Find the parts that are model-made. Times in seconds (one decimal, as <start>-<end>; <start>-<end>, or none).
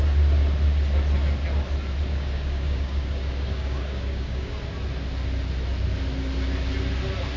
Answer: 2.1-4.6